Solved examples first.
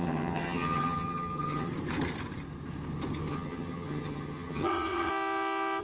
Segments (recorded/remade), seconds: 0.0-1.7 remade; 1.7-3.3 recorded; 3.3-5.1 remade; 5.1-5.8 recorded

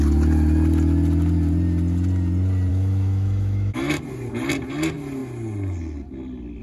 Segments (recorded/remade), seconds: 0.0-2.7 recorded; 2.7-4.0 remade; 4.0-6.6 recorded